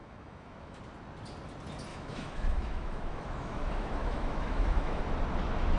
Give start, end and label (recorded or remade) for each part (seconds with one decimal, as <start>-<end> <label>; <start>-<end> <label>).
0.0-0.8 remade; 0.8-1.9 recorded; 1.9-5.0 remade; 5.0-5.8 recorded